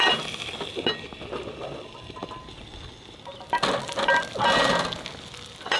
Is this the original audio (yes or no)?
yes